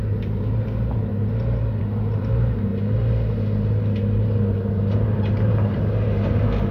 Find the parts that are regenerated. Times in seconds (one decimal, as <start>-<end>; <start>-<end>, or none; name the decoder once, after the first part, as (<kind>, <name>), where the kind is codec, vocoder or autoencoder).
0.0-1.1 (vocoder, BigVGAN v2); 1.8-2.7